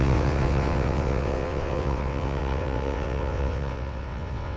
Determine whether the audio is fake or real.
fake